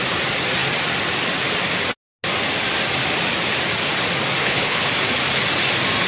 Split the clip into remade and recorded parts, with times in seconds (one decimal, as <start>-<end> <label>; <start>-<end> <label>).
0.0-4.4 recorded; 4.4-4.9 remade; 4.9-6.1 recorded